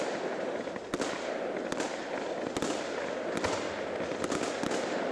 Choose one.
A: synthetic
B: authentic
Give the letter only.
B